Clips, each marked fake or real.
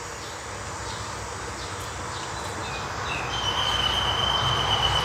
real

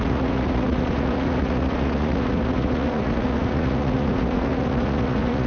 fake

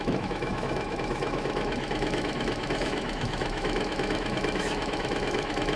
fake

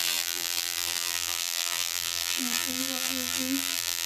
fake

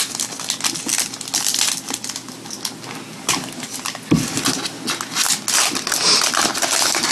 real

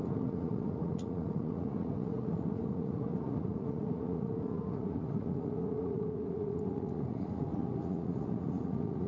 fake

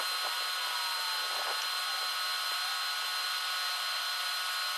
real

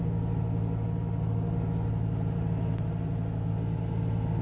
real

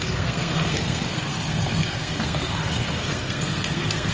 fake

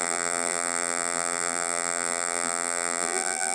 fake